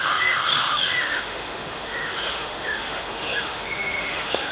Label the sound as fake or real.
fake